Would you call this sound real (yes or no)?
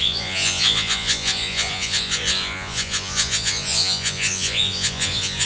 no